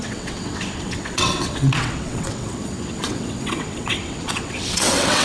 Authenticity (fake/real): fake